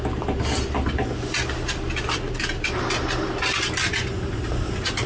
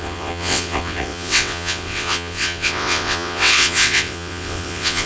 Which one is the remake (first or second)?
second